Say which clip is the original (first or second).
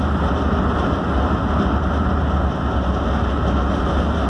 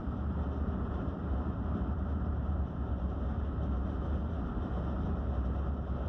first